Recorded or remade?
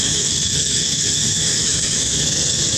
remade